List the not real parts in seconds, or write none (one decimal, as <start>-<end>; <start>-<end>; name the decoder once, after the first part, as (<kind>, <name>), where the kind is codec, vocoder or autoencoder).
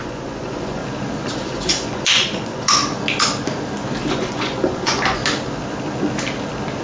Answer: 0.0-0.8 (vocoder, Vocos); 1.4-2.8; 4.1-5.2